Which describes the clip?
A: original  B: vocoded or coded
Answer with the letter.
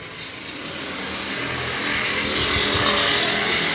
A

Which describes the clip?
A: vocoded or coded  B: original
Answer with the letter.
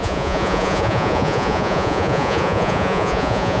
A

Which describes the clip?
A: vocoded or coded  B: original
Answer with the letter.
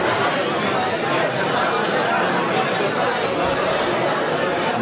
B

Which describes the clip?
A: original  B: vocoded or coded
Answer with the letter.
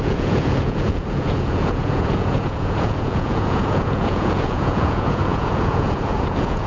B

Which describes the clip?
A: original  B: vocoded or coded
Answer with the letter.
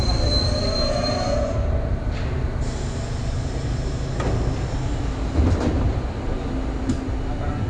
A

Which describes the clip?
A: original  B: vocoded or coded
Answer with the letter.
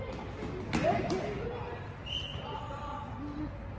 A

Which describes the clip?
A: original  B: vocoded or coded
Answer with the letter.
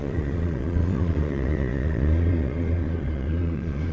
B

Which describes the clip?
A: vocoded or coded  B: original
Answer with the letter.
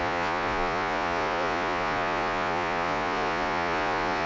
A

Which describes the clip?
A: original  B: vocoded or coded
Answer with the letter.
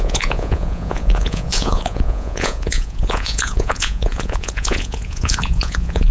B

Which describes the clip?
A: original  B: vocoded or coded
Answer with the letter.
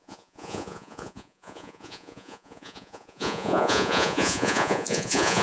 B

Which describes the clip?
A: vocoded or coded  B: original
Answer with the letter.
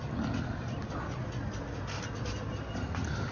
B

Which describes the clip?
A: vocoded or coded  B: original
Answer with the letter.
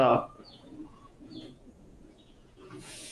A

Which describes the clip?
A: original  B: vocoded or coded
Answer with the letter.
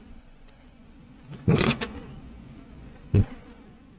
B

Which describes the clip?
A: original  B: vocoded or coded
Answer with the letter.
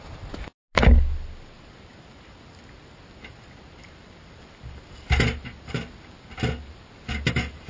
A